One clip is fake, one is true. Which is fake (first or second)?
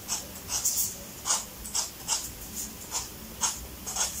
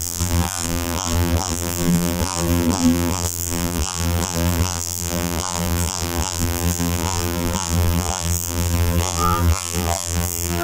second